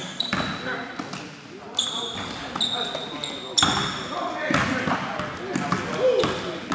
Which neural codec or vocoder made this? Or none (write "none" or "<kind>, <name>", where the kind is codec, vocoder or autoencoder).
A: none